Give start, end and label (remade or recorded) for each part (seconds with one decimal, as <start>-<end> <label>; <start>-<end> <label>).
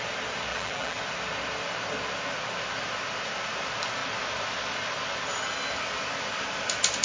0.0-0.5 recorded; 0.5-1.0 remade; 1.0-7.0 recorded